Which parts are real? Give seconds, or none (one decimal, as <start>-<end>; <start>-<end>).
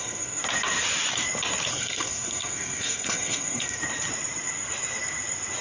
0.4-1.7; 3.8-5.6